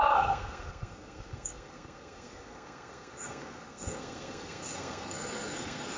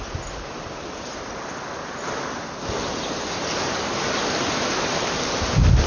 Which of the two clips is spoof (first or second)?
first